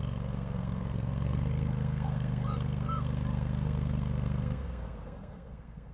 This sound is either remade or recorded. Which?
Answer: remade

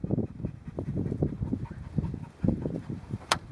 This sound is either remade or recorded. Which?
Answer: recorded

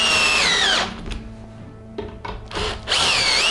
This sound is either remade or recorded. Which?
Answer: recorded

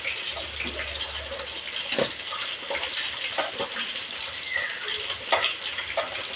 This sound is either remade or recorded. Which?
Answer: recorded